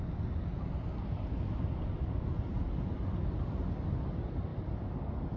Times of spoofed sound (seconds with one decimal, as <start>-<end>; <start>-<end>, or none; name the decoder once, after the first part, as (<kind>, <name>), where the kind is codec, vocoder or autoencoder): none